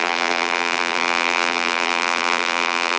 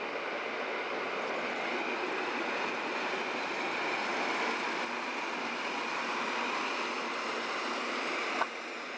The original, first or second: second